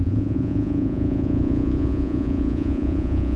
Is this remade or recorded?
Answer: remade